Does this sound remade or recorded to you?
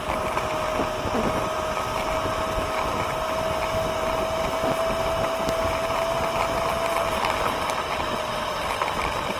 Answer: recorded